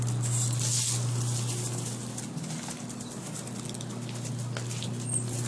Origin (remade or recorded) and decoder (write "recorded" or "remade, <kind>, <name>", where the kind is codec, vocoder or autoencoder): recorded